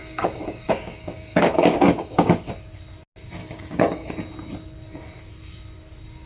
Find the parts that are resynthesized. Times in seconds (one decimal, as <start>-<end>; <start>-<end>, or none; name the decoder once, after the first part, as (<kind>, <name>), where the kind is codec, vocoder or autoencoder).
0.0-2.5 (codec, DAC); 3.4-4.1